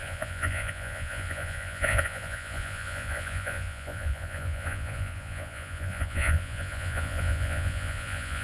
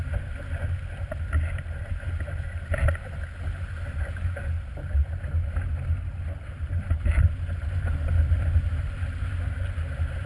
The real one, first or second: second